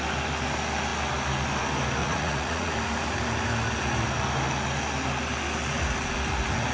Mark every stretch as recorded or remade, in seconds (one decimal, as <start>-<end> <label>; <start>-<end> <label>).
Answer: 0.0-2.0 recorded; 2.0-2.7 remade; 2.7-6.7 recorded